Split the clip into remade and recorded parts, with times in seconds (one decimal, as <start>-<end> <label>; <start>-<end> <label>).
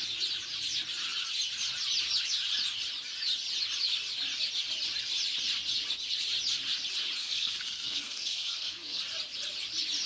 0.0-7.2 recorded; 7.2-9.0 remade; 9.0-10.1 recorded